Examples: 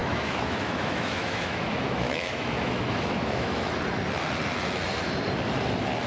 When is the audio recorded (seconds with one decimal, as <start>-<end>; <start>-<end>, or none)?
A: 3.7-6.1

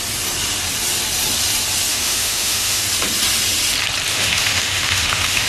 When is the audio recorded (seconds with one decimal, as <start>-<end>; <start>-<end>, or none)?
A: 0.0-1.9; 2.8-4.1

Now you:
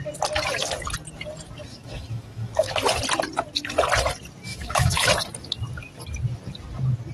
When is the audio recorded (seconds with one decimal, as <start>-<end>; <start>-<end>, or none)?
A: 0.0-1.7; 2.8-4.5; 5.1-7.1

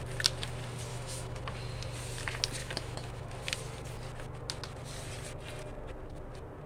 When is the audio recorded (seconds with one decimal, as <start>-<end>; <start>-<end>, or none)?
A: 0.0-0.9; 1.4-2.6; 3.3-6.7